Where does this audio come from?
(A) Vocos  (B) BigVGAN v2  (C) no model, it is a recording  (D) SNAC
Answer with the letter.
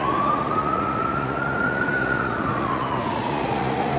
A